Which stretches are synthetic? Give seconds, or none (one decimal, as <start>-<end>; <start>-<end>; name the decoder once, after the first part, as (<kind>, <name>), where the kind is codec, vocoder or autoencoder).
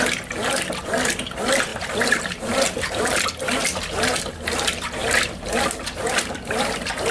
1.7-3.2 (vocoder, BigVGAN v2); 5.0-5.6